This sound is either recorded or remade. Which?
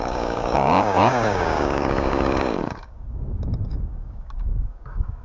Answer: remade